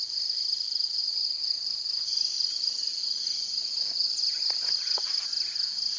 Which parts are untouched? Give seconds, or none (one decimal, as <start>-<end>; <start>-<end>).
0.0-6.0